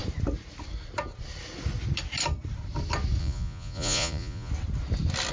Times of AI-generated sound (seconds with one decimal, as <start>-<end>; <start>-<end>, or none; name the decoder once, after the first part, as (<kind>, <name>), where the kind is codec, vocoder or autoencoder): 3.2-4.5 (vocoder, Vocos)